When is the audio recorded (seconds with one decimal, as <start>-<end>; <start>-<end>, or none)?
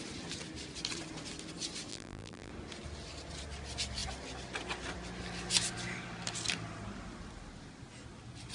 0.0-1.9; 2.5-8.5